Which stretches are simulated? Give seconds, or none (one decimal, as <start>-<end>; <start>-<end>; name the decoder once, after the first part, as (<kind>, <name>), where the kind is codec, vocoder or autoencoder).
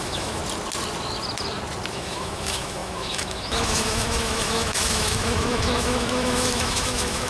0.0-0.4 (autoencoder, DAC-VAE); 1.9-7.3